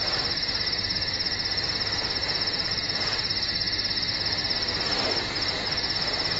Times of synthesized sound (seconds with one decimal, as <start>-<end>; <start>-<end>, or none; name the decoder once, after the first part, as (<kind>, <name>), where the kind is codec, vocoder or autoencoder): 2.2-3.3 (vocoder, Vocos)